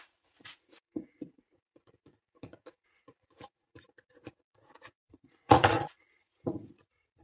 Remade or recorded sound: remade